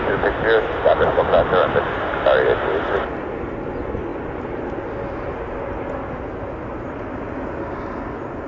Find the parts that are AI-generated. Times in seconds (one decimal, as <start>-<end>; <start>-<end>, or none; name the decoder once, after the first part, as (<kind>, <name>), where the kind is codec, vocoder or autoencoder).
none